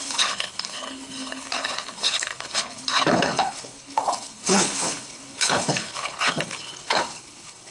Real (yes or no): no